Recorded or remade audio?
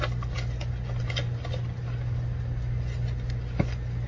recorded